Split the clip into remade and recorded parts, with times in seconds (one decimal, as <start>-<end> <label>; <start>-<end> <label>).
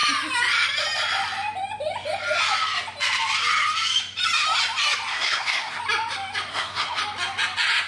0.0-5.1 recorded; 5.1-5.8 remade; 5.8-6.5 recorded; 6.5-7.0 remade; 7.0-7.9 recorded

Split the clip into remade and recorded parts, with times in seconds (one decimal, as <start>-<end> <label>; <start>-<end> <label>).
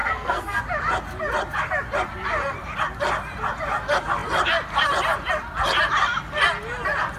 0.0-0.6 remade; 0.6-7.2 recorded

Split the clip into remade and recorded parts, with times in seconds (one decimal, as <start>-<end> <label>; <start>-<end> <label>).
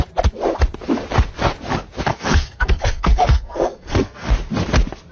0.0-2.1 recorded; 2.1-4.3 remade; 4.3-5.1 recorded